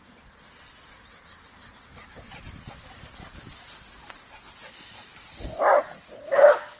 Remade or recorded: recorded